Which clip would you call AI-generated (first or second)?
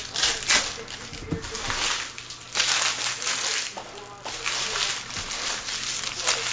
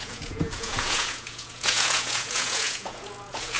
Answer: second